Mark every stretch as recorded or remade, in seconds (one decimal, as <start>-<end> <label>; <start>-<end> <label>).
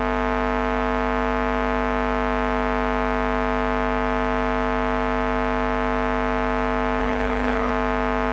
0.0-7.0 recorded; 7.0-7.7 remade; 7.7-8.3 recorded